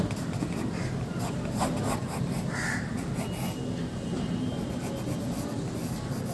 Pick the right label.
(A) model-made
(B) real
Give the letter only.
B